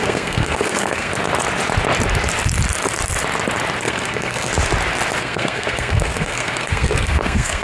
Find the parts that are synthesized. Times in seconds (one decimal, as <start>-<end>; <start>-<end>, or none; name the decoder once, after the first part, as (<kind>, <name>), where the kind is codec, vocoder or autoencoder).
0.0-1.1 (codec, SNAC); 3.8-4.5; 5.2-7.6